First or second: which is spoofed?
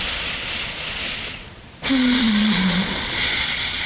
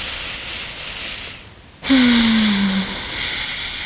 first